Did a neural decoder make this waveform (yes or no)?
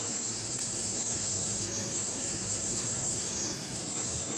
yes